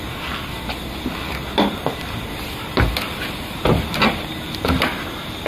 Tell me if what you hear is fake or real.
real